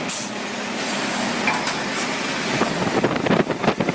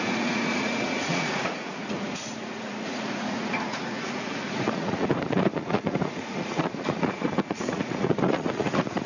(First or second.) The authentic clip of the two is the first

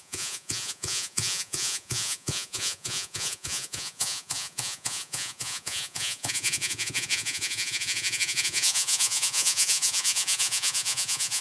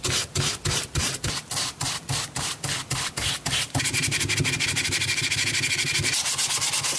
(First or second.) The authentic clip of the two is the second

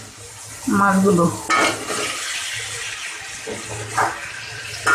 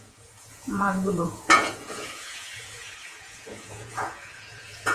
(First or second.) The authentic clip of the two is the first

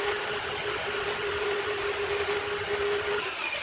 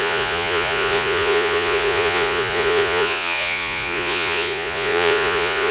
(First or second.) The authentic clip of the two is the first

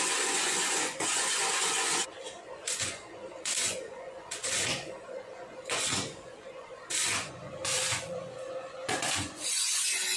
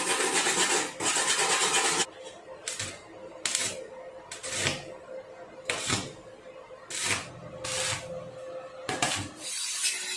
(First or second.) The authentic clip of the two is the second